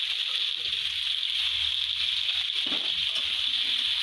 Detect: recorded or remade recorded